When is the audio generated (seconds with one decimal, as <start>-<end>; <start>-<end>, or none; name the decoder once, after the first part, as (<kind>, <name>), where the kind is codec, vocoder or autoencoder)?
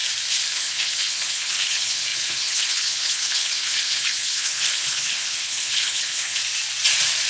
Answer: 0.5-6.4 (codec, HILCodec)